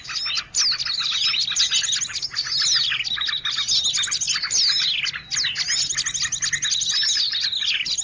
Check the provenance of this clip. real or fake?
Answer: real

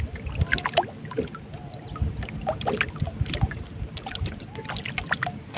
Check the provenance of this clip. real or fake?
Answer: real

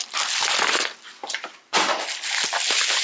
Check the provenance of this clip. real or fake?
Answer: real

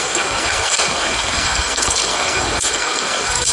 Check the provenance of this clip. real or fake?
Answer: fake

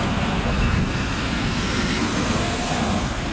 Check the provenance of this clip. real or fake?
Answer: fake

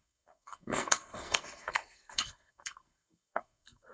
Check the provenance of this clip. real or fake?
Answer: fake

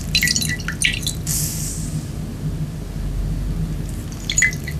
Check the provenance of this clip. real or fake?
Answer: real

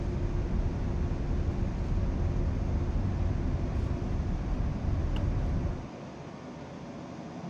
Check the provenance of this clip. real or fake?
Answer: real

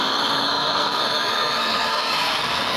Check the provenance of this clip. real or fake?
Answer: fake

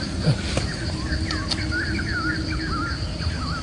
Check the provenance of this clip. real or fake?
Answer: real